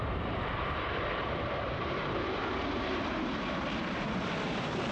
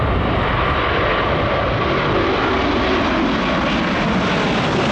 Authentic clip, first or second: second